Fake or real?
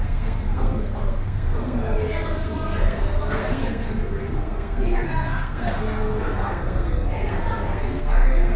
fake